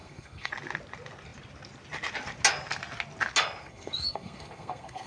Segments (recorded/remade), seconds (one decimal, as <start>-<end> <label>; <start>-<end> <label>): 0.0-0.5 remade; 0.5-3.6 recorded; 3.6-5.1 remade